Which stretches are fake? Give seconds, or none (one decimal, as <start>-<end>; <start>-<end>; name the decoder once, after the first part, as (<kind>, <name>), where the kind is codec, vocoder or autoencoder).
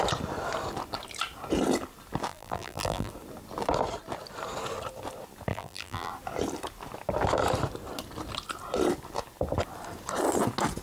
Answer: 2.3-3.1 (vocoder, BigVGAN v2); 5.5-6.1